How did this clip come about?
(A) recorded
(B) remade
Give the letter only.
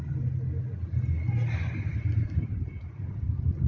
A